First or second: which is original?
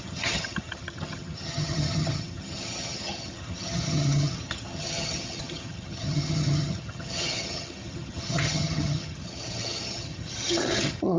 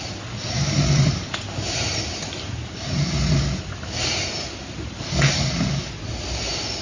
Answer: second